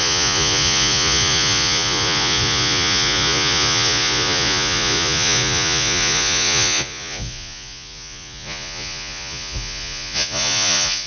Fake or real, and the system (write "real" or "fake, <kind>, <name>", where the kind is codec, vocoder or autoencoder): fake, vocoder, Vocos